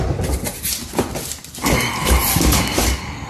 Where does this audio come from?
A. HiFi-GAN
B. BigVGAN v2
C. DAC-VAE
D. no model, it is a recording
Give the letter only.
D